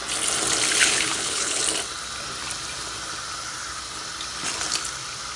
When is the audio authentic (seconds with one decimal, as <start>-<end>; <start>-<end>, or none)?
0.0-0.8; 1.6-5.4